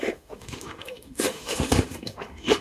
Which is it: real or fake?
fake